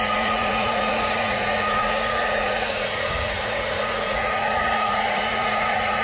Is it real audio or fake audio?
fake